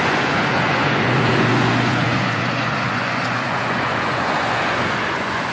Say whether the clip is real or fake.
fake